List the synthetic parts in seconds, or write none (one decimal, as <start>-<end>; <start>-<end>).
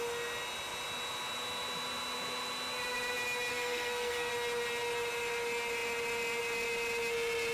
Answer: 3.5-4.3